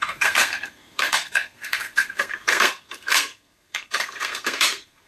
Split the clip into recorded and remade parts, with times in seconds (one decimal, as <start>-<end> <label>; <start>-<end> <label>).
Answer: 0.0-5.1 remade

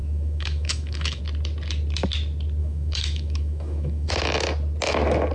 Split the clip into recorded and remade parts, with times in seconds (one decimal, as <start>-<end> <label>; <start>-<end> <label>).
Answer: 0.0-1.2 remade; 1.2-2.6 recorded; 2.6-4.1 remade; 4.1-5.3 recorded

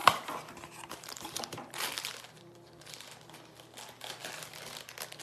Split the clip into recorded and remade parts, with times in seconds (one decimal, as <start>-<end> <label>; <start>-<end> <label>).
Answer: 0.0-3.1 remade; 3.1-5.2 recorded

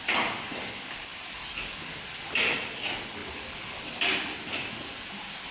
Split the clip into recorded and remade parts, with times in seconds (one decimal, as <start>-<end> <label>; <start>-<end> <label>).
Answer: 0.0-5.5 recorded

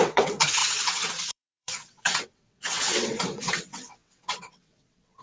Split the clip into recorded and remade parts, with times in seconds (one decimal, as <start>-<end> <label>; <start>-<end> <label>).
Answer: 0.0-5.2 remade